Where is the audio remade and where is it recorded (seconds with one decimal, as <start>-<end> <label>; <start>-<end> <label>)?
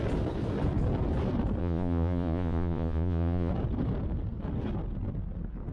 0.0-1.6 recorded; 1.6-3.5 remade; 3.5-5.7 recorded